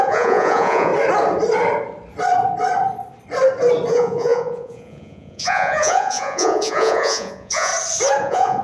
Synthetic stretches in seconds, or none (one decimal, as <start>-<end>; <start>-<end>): 0.0-0.9; 3.9-7.7; 8.2-8.6